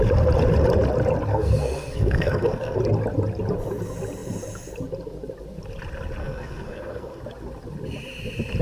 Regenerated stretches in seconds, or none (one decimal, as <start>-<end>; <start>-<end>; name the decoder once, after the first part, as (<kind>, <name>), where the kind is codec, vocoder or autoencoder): 1.3-2.8 (codec, SNAC); 6.2-7.2